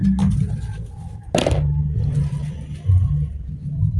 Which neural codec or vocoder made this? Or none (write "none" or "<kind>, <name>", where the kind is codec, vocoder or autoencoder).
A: none